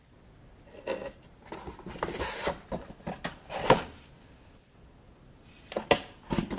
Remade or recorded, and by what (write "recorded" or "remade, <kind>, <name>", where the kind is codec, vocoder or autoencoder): recorded